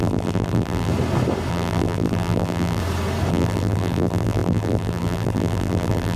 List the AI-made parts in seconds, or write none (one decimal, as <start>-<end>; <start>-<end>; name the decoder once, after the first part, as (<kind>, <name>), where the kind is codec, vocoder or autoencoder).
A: 0.0-0.9 (vocoder, BigVGAN v2); 1.5-2.8; 3.3-6.2